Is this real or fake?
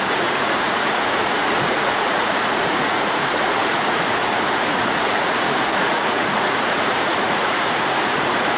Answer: fake